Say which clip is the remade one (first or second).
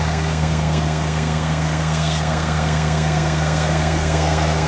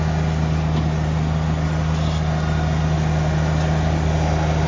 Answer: first